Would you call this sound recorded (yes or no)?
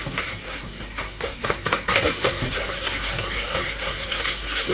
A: no